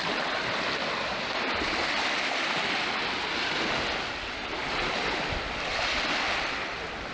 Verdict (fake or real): real